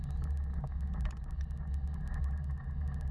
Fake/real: real